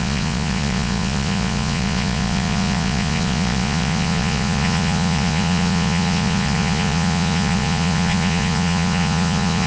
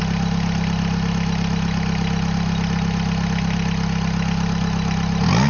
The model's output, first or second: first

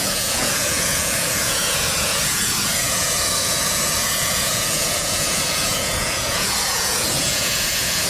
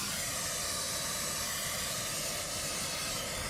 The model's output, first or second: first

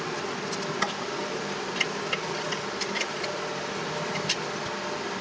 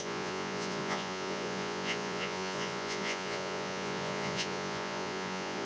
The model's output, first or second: second